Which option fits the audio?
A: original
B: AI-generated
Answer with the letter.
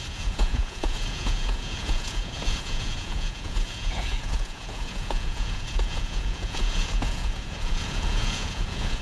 B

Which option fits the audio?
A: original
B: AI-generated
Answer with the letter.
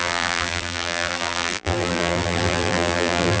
B